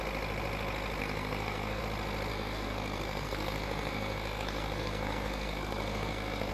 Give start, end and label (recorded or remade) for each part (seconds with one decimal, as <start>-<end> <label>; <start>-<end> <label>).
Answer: 0.0-1.0 recorded; 1.0-1.8 remade; 1.8-2.3 recorded; 2.3-6.5 remade